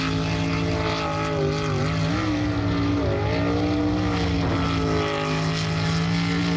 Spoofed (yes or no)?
no